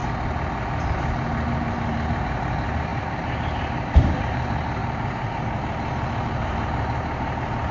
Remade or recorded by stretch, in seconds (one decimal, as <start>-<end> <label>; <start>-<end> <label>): 0.0-1.5 recorded; 1.5-7.7 remade